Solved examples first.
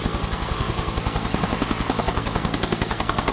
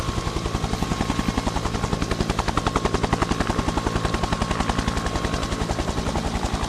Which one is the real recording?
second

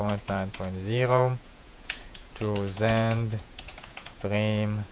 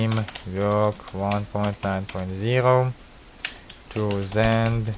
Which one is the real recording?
second